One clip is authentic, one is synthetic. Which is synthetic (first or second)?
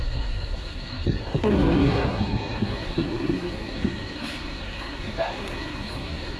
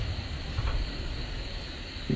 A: first